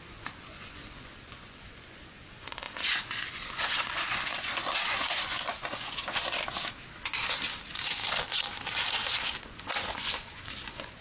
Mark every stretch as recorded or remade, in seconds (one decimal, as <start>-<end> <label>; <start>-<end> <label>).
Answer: 0.0-6.4 remade; 6.4-7.3 recorded; 7.3-8.0 remade; 8.0-9.4 recorded; 9.4-11.0 remade